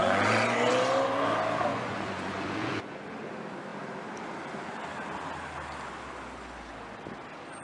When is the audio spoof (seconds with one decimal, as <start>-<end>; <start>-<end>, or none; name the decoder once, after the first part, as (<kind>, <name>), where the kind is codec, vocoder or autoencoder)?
0.0-0.7 (vocoder, Vocos); 1.7-3.1